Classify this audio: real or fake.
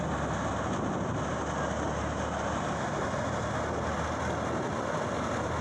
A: real